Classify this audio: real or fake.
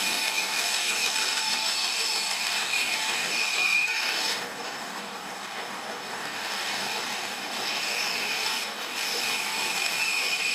fake